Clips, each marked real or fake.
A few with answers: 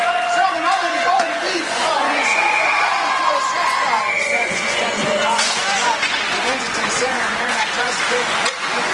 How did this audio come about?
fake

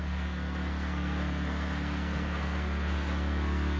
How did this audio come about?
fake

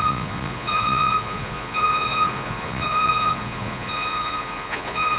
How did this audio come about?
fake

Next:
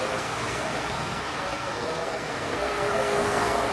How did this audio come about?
fake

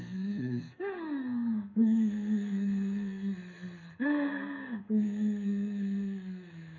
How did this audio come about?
fake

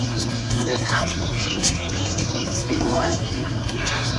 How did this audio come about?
fake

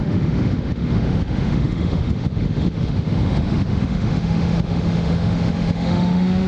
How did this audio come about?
fake